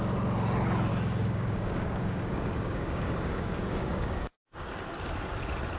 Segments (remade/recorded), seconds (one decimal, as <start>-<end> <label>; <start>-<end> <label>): 0.0-0.9 recorded; 0.9-4.4 remade; 4.4-5.8 recorded